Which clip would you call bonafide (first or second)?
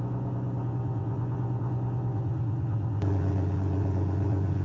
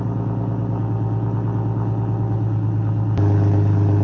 second